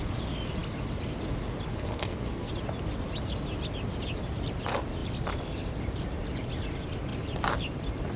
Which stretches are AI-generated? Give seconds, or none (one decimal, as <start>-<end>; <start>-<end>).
1.7-2.5